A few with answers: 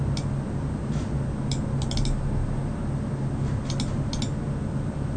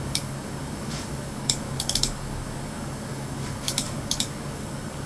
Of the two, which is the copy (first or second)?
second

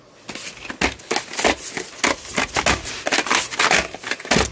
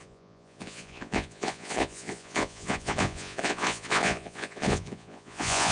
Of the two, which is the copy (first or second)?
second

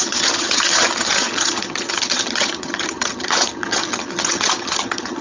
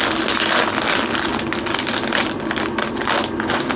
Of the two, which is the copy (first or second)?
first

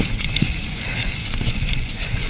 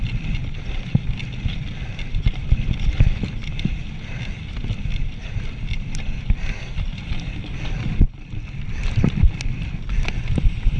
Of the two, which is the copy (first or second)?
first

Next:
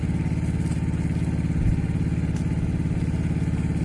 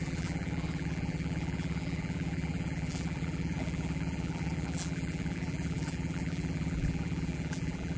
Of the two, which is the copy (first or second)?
second